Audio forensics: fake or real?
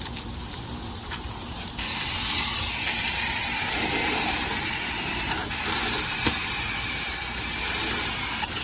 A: fake